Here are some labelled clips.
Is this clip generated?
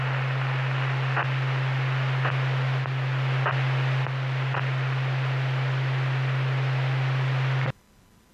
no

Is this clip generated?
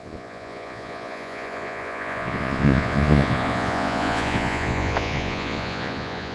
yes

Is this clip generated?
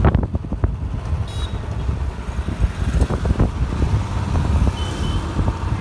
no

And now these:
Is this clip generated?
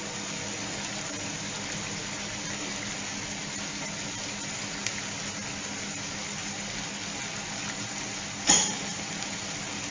no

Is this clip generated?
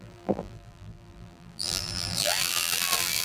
yes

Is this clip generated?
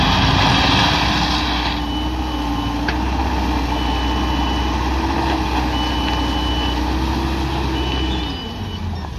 no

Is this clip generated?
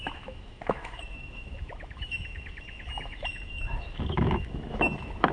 yes